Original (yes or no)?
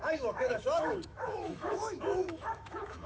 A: no